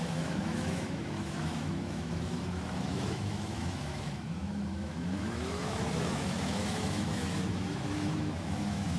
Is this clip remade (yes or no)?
yes